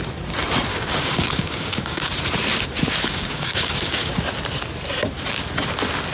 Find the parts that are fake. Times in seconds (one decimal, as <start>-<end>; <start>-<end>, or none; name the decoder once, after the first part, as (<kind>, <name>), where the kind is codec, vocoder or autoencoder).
0.7-2.1 (codec, DAC); 3.1-4.1